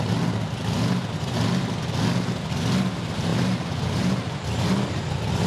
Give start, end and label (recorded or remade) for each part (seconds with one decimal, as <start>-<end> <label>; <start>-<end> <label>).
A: 0.0-5.5 recorded